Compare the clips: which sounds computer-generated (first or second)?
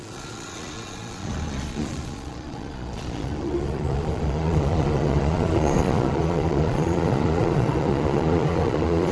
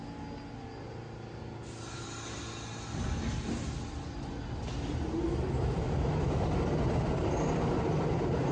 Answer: first